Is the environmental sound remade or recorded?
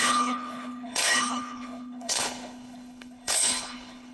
remade